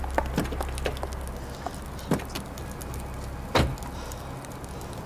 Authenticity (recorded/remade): recorded